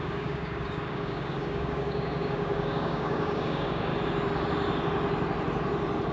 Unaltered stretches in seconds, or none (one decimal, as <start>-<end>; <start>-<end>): 3.9-6.1